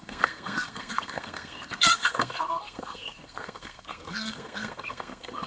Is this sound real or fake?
fake